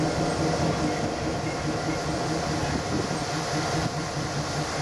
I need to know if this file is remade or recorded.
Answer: recorded